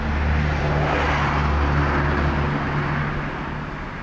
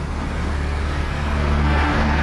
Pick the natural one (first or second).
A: first